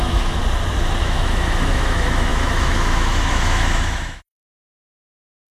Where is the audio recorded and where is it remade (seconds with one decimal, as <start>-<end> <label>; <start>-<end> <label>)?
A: 0.0-0.4 remade; 0.4-1.0 recorded; 1.0-5.5 remade